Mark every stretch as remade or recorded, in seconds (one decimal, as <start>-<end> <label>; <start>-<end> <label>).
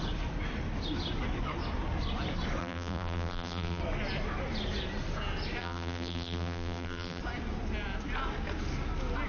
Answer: 0.0-2.6 recorded; 2.6-3.8 remade; 3.8-5.6 recorded; 5.6-7.2 remade; 7.2-9.3 recorded